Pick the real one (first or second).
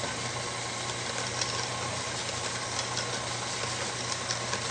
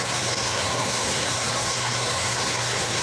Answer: first